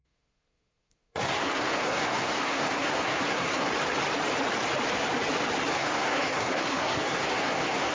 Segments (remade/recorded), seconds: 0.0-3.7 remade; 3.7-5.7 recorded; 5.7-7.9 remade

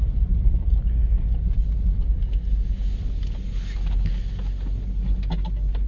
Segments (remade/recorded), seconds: 0.0-5.9 recorded

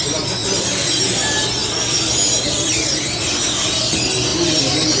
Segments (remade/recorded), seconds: 0.0-5.0 recorded

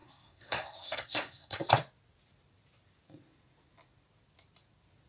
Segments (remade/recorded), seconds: 0.0-1.7 remade; 1.7-5.1 recorded

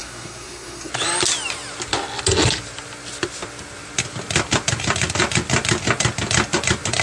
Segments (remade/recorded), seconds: 0.0-0.9 remade; 0.9-7.0 recorded

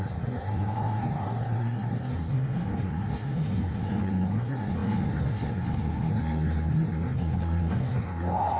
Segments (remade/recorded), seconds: 0.0-8.6 remade